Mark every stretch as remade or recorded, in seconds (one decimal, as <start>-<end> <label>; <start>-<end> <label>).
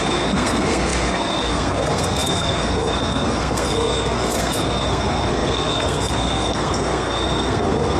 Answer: 0.0-8.0 remade